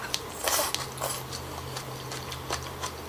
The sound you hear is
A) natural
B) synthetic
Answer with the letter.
A